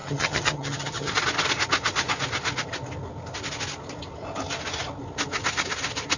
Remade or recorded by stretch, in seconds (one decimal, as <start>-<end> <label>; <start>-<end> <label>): 0.0-1.1 remade; 1.1-6.2 recorded